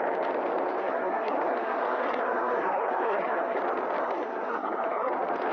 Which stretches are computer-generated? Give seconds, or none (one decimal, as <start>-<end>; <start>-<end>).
0.8-3.6; 4.0-5.1